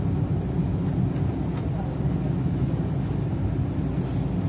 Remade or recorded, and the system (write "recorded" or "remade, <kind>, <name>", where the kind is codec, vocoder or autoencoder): recorded